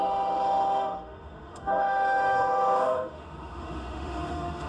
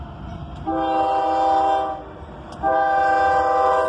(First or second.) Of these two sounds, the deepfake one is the first